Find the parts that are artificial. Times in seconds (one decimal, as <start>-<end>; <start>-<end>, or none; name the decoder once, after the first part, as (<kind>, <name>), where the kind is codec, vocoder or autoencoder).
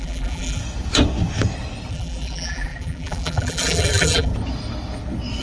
0.0-0.6 (vocoder, BigVGAN v2); 1.9-4.3